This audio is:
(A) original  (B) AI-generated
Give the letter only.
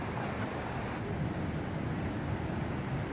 A